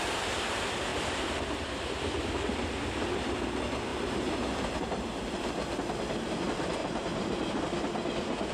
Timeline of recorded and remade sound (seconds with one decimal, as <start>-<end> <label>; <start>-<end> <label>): 0.0-0.9 recorded; 0.9-1.6 remade; 1.6-3.9 recorded; 3.9-5.5 remade; 5.5-6.8 recorded; 6.8-7.6 remade; 7.6-8.5 recorded